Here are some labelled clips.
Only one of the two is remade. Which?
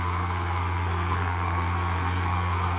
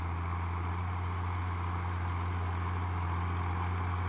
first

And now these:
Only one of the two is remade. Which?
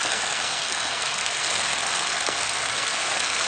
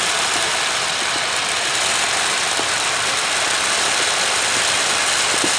first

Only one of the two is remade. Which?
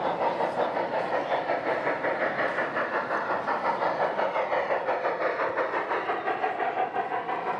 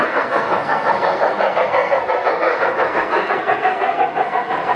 second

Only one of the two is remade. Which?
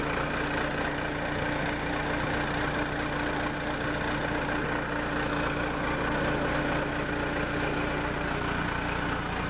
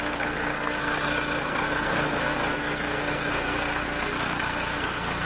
second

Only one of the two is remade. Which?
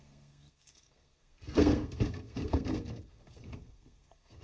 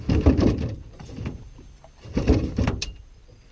first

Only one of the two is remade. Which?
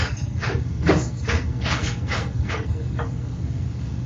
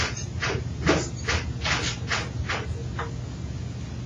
first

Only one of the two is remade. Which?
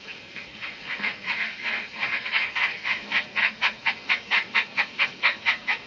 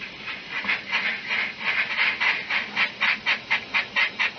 first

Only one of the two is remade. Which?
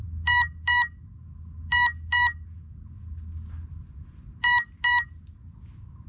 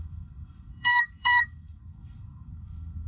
second